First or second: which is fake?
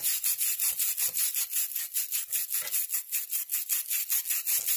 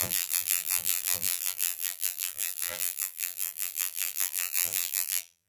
second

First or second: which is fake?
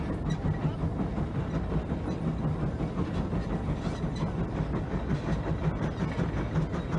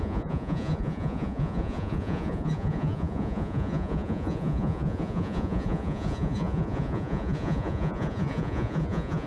second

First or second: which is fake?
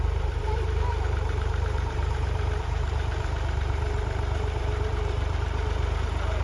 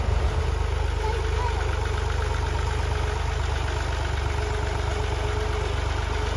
first